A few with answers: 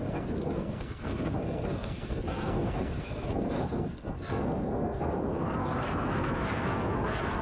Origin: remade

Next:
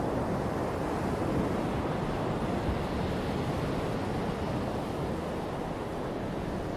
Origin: recorded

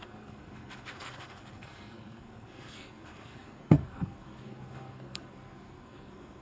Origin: remade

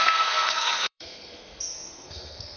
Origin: remade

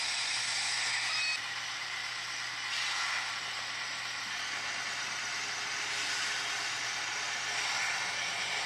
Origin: recorded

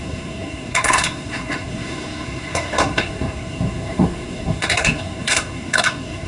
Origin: remade